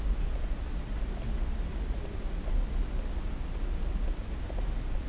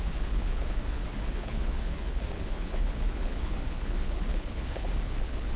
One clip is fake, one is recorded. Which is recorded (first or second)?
first